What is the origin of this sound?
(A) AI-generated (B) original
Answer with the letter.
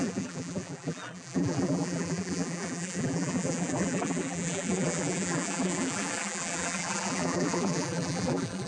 A